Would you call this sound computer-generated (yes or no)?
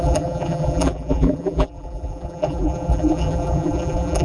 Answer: yes